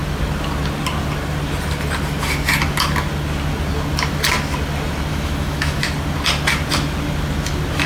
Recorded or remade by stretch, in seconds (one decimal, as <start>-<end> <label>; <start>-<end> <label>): 0.0-5.1 recorded; 5.1-5.8 remade; 5.8-7.9 recorded